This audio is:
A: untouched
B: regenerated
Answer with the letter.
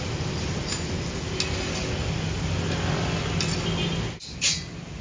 A